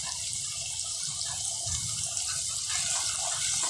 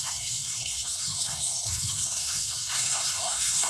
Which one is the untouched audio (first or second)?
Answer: first